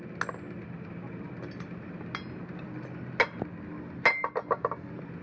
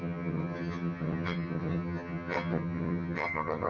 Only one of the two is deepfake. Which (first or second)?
second